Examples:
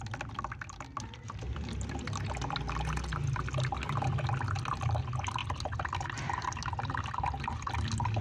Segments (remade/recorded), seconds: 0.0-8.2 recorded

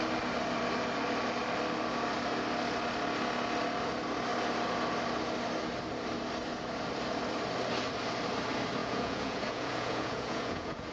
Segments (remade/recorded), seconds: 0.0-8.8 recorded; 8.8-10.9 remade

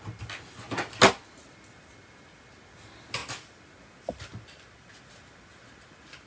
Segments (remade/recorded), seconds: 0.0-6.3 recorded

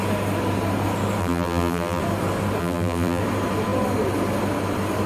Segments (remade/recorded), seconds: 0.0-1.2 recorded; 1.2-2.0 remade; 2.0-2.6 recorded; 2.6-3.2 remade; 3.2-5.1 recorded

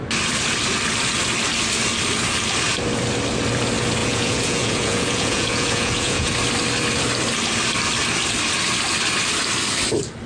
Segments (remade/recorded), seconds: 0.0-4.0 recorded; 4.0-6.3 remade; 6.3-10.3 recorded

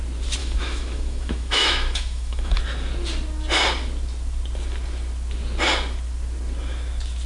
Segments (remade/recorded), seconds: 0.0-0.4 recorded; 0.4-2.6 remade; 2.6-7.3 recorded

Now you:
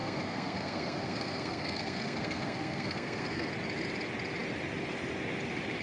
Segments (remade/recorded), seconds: 0.0-3.5 remade; 3.5-5.8 recorded